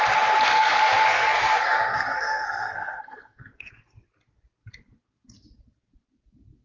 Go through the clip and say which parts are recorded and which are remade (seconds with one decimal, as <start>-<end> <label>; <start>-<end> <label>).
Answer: 0.0-0.5 recorded; 0.5-3.7 remade; 3.7-6.6 recorded

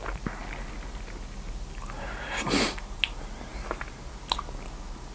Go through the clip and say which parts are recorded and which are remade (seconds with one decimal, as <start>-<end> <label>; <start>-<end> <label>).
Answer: 0.0-5.1 recorded

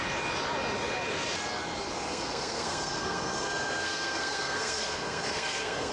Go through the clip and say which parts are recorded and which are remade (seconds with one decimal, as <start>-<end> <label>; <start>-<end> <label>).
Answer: 0.0-2.1 recorded; 2.1-5.9 remade

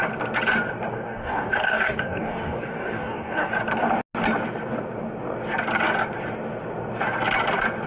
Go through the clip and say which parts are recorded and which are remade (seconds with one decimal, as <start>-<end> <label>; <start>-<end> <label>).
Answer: 0.0-0.9 recorded; 0.9-3.5 remade; 3.5-7.9 recorded

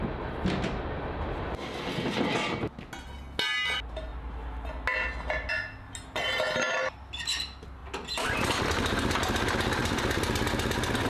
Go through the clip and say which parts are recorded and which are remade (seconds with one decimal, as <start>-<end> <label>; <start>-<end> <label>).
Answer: 0.0-9.8 recorded; 9.8-10.4 remade; 10.4-11.1 recorded

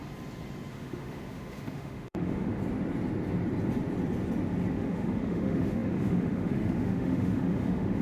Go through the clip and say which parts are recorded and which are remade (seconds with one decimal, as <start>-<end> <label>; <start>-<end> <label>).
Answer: 0.0-0.7 recorded; 0.7-2.6 remade; 2.6-4.7 recorded; 4.7-8.0 remade

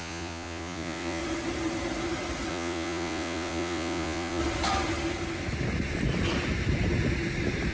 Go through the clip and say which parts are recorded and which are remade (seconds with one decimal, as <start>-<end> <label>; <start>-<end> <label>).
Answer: 0.0-1.2 remade; 1.2-2.5 recorded; 2.5-4.4 remade; 4.4-7.7 recorded

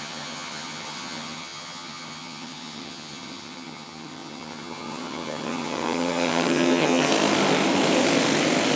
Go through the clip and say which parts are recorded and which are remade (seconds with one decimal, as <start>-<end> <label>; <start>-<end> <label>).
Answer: 0.0-7.1 remade; 7.1-8.8 recorded